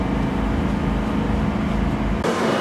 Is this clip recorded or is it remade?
recorded